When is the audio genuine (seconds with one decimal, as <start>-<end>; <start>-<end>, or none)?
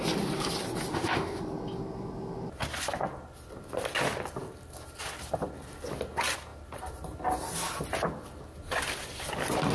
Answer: 0.0-0.9; 1.4-9.7